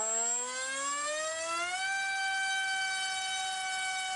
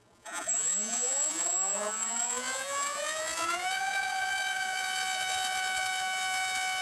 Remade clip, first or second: second